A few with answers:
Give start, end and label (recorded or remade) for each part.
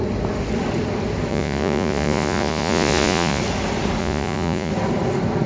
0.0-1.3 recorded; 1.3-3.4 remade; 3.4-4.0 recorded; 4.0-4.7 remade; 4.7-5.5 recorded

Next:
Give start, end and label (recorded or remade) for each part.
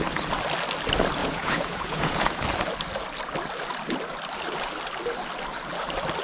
0.0-1.2 recorded; 1.2-2.4 remade; 2.4-6.2 recorded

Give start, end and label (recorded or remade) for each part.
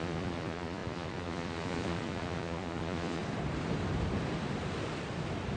0.0-3.2 remade; 3.2-5.6 recorded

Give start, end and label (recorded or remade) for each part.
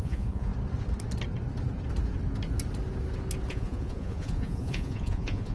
0.0-0.5 remade; 0.5-3.5 recorded; 3.5-5.5 remade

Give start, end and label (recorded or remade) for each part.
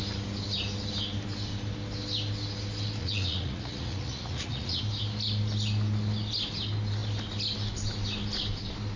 0.0-3.0 recorded; 3.0-4.8 remade; 4.8-9.0 recorded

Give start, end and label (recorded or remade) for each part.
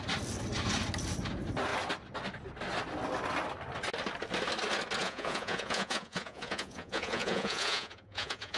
0.0-5.0 recorded; 5.0-8.6 remade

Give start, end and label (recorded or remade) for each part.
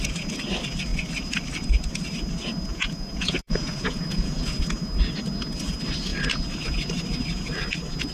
0.0-2.7 recorded; 2.7-4.6 remade; 4.6-8.1 recorded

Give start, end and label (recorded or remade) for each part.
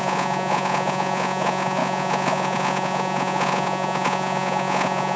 0.0-5.2 remade